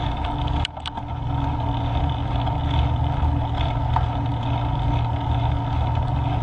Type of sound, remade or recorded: recorded